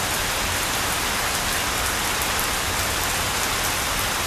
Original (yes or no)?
yes